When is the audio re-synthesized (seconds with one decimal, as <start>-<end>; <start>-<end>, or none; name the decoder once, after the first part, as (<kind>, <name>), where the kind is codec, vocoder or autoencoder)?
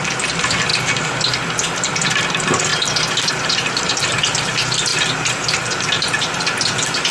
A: none